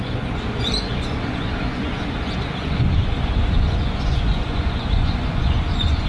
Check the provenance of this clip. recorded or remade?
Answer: remade